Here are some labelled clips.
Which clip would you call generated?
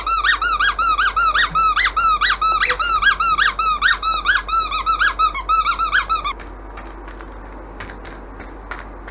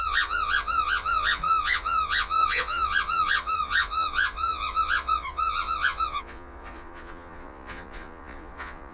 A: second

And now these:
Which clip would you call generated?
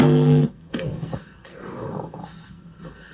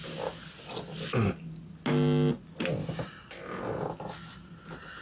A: first